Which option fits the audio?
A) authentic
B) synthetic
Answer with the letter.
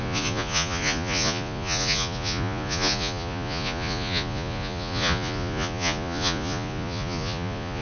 B